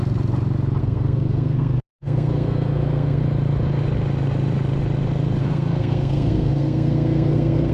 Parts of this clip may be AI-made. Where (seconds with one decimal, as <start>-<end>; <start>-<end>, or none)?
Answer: 0.8-3.2; 5.4-7.7